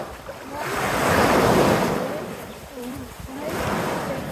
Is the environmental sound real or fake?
fake